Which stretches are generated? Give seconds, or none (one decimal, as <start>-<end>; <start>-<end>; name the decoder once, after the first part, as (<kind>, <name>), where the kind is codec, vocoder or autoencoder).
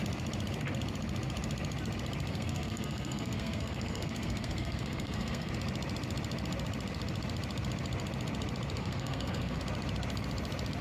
2.3-5.5 (codec, SNAC); 8.8-9.6